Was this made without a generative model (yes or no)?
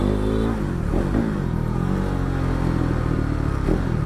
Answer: yes